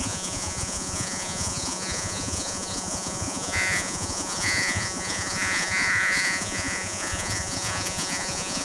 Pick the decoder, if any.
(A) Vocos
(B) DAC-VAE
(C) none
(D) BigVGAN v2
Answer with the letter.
A